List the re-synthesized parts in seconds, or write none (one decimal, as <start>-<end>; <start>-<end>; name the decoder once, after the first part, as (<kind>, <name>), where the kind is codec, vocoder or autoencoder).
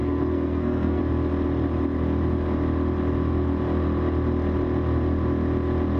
0.0-1.0 (codec, SNAC)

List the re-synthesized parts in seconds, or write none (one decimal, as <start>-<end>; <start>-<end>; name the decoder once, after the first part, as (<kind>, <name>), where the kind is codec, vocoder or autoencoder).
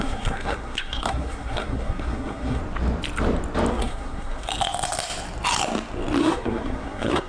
0.0-2.6 (codec, SNAC); 3.7-4.5; 6.2-7.3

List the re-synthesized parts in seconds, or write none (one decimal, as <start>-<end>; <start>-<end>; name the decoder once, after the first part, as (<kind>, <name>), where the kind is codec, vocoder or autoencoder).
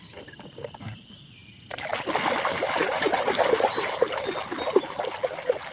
none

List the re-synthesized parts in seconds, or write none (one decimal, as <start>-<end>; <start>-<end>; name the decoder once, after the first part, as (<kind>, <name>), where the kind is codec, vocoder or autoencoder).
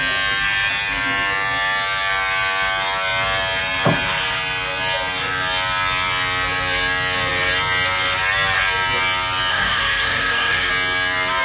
9.5-10.7 (codec, SNAC)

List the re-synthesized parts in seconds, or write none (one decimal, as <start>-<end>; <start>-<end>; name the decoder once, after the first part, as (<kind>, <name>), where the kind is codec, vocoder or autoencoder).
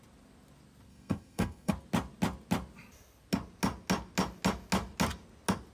0.9-1.7 (codec, SNAC)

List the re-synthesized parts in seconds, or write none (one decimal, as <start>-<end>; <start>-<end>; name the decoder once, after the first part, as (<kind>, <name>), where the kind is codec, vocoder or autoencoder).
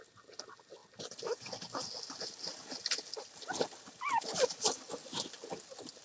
none